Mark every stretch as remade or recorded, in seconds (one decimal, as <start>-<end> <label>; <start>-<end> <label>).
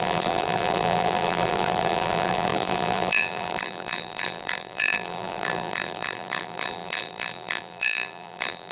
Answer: 0.0-8.7 remade